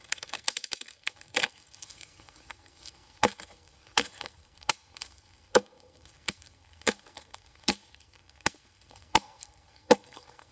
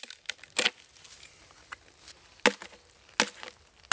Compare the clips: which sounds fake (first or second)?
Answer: first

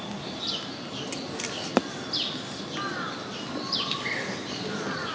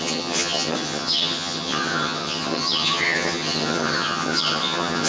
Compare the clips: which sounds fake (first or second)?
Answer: second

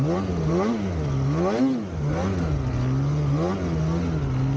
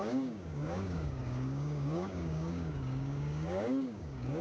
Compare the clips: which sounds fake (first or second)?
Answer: second